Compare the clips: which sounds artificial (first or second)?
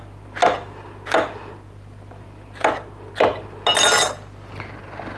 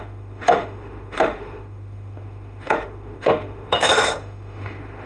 second